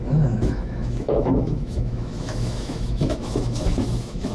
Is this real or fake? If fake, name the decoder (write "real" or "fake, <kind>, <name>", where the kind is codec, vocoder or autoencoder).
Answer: fake, autoencoder, DAC-VAE